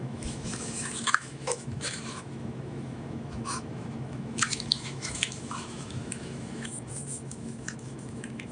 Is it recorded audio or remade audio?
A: remade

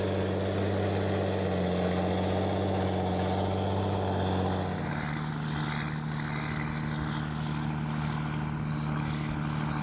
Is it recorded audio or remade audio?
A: recorded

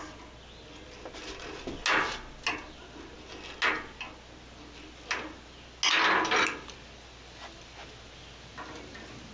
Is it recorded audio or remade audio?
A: recorded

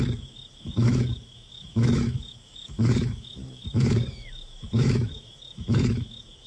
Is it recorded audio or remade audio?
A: remade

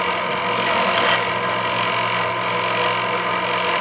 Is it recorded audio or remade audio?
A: recorded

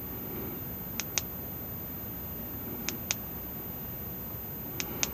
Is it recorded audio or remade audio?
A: recorded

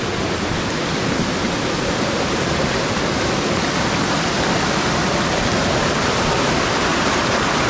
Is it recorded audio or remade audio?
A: recorded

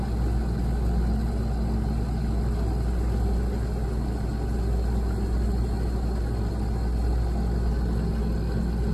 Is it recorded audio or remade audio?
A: recorded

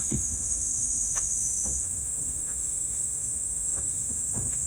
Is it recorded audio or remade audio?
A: remade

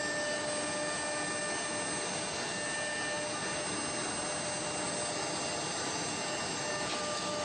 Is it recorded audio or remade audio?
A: recorded